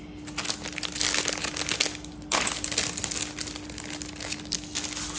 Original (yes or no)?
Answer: yes